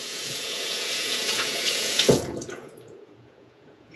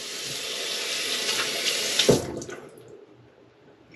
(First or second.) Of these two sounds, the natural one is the second